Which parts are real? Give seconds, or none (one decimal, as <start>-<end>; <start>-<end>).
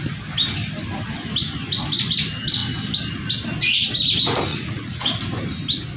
0.0-4.5; 5.2-6.0